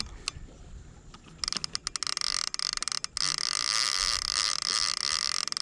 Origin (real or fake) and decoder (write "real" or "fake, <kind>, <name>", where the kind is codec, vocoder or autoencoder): real